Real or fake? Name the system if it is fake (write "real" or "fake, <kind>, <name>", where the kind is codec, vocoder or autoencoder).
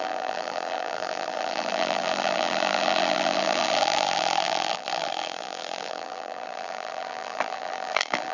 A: fake, vocoder, BigVGAN v2